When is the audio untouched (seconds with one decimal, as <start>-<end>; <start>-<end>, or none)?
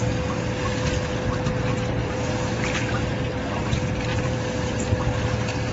0.0-2.0; 3.3-4.1; 4.7-5.7